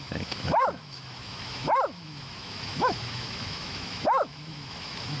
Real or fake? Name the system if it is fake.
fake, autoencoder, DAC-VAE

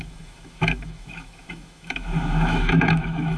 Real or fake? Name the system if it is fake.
fake, autoencoder, DAC-VAE